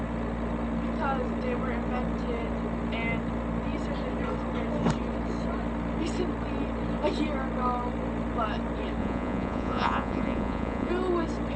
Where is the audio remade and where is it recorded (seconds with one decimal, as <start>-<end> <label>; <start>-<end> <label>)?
0.0-9.0 recorded; 9.0-10.9 remade; 10.9-11.6 recorded